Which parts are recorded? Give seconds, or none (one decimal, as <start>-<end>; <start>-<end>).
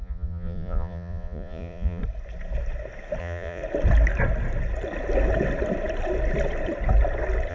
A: 2.0-3.2; 3.6-7.5